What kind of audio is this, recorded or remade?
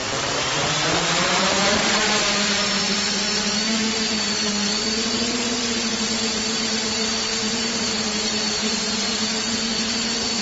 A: remade